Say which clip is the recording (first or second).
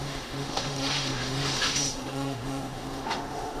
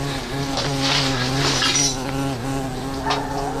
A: second